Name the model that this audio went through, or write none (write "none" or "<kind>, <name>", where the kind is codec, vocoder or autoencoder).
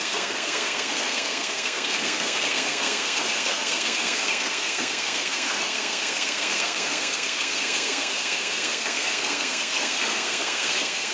codec, SNAC